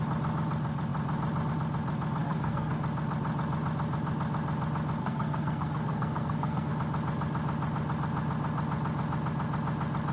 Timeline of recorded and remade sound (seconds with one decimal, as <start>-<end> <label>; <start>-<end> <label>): 0.0-2.2 recorded; 2.2-2.8 remade; 2.8-5.0 recorded; 5.0-6.7 remade; 6.7-10.1 recorded